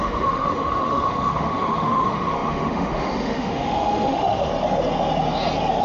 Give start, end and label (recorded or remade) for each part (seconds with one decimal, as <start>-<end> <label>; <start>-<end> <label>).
0.0-4.5 remade; 4.5-5.8 recorded